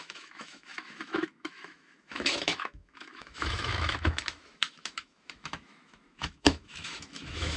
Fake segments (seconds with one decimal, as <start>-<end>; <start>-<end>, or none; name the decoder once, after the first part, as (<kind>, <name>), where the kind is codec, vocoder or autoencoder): 0.0-7.6 (autoencoder, DAC-VAE)